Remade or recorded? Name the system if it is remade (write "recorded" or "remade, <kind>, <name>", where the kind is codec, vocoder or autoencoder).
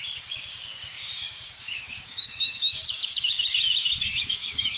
remade, codec, DAC